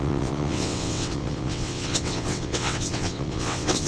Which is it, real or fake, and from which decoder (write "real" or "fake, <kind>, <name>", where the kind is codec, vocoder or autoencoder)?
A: fake, vocoder, WaveNeXt